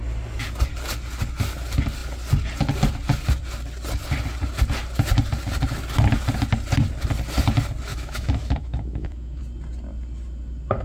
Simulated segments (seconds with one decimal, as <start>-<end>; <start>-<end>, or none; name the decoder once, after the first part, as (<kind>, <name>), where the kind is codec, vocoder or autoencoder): 7.9-9.4 (autoencoder, DAC-VAE)

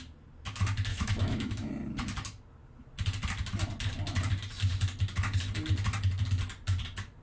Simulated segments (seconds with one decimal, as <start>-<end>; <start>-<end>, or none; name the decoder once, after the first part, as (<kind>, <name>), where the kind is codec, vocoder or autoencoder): 0.9-1.7 (autoencoder, DAC-VAE)

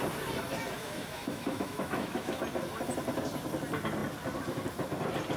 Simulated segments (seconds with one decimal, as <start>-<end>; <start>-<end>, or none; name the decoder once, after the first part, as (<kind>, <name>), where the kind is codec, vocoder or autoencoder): 0.8-2.4 (autoencoder, DAC-VAE)